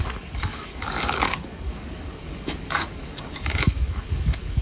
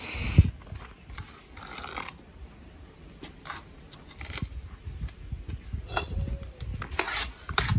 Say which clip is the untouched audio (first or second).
second